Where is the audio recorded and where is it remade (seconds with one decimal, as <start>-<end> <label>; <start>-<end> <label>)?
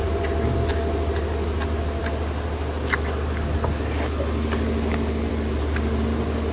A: 0.0-6.5 remade